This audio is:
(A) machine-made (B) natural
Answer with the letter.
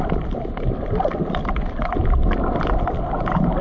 B